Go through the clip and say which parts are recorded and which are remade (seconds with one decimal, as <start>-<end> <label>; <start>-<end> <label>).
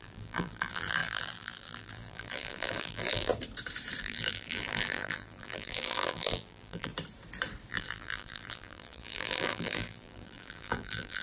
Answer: 0.0-3.3 remade; 3.3-4.0 recorded; 4.0-6.9 remade; 6.9-7.7 recorded; 7.7-11.2 remade